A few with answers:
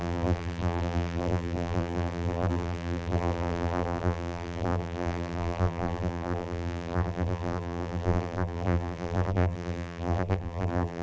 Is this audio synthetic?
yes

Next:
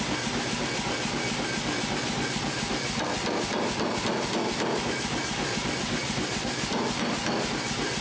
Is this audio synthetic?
no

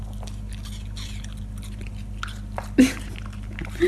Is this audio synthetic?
no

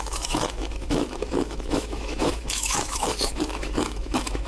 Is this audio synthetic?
yes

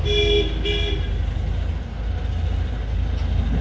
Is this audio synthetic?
no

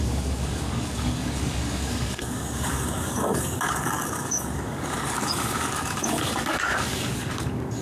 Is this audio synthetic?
yes